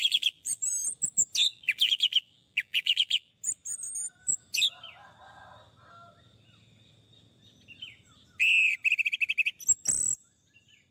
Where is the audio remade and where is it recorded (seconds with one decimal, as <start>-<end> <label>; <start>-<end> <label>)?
0.0-0.7 remade; 0.7-1.5 recorded; 1.5-3.3 remade; 3.3-10.9 recorded

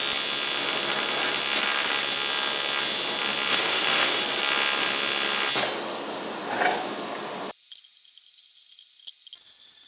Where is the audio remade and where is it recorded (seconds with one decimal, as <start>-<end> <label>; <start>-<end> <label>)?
0.0-3.5 recorded; 3.5-4.2 remade; 4.2-9.9 recorded

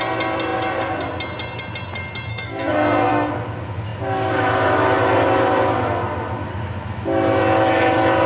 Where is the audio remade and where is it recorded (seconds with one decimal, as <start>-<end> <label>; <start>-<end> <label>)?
0.0-2.3 recorded; 2.3-3.3 remade; 3.3-8.3 recorded